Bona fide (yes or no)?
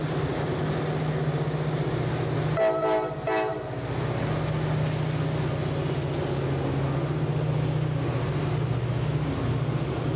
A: yes